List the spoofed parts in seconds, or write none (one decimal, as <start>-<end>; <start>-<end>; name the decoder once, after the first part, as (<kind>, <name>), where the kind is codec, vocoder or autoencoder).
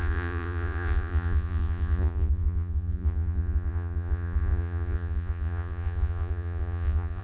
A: 0.0-7.2 (vocoder, Vocos)